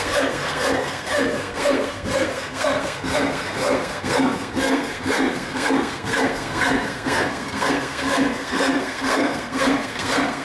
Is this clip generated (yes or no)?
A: yes